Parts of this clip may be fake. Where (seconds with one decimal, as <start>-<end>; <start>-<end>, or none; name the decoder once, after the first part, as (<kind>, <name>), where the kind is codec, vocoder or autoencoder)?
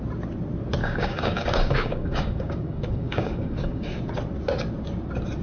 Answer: 0.8-4.0 (codec, DAC)